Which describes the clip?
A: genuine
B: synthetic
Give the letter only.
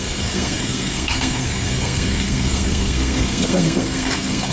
B